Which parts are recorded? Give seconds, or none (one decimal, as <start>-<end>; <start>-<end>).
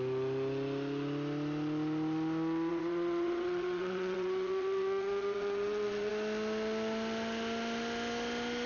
0.0-2.7; 6.1-8.7